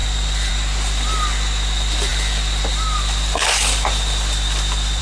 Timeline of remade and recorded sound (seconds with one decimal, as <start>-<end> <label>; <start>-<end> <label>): 0.0-5.0 recorded